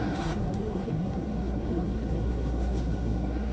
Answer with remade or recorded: remade